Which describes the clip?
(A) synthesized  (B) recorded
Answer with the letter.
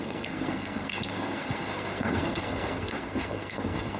A